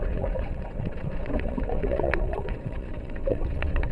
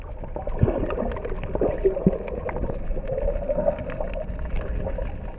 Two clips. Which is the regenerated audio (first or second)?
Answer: first